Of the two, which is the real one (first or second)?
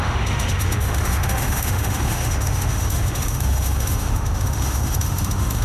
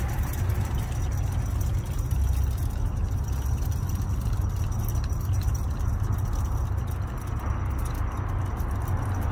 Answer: second